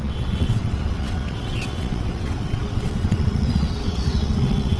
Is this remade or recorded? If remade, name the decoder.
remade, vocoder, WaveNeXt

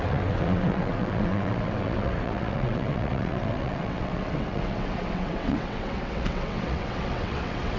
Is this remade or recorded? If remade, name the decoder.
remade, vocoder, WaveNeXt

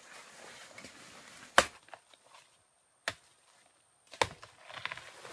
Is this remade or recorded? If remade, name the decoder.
recorded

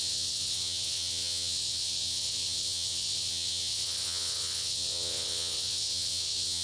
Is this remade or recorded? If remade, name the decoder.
remade, vocoder, WaveNeXt